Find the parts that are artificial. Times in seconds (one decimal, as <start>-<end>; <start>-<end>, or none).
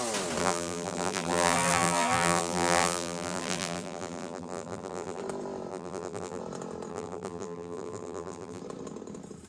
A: 0.4-5.2; 5.7-6.4; 6.9-8.6